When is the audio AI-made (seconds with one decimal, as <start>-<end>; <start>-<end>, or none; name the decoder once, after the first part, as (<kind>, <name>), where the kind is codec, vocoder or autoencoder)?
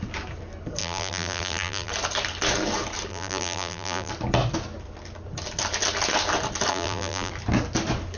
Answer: 0.8-1.9 (vocoder, BigVGAN v2); 3.1-4.1; 6.7-7.3